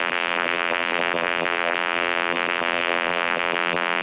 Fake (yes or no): yes